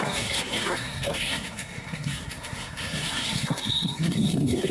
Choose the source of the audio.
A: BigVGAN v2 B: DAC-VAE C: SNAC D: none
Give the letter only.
C